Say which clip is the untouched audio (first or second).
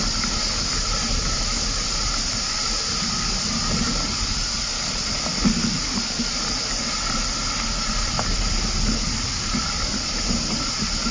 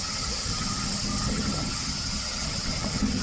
first